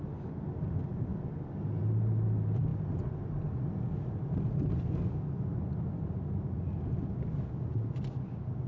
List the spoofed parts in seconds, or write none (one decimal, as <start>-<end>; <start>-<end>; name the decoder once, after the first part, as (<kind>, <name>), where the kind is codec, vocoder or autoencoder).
none